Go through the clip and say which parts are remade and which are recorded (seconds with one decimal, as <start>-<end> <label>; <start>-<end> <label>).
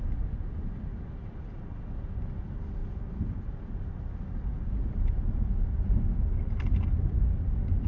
0.0-7.9 recorded